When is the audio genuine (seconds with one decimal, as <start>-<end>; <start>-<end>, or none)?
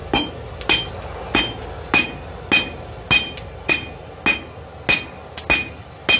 0.0-6.2